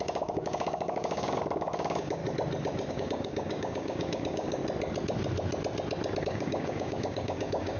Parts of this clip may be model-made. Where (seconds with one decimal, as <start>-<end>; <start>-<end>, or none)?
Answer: 0.0-2.2; 2.9-4.6; 6.2-7.8